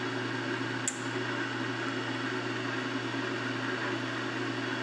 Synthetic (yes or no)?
no